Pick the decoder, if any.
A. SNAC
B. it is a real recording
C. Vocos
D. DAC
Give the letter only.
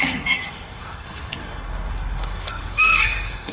A